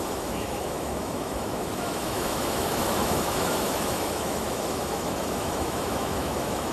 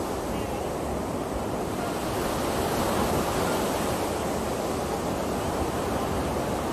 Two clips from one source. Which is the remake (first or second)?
first